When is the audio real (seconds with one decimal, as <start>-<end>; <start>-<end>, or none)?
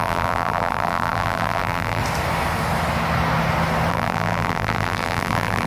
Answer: 2.0-3.9